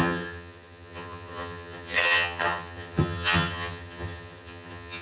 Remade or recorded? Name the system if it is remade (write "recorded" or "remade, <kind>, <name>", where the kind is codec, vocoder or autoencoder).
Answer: remade, vocoder, HiFi-GAN